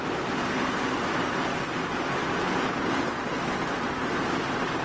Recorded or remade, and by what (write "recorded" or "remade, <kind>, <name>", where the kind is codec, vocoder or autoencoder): recorded